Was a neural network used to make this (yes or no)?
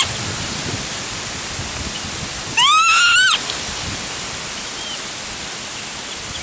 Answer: no